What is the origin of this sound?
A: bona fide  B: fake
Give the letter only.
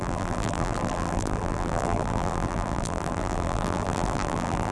B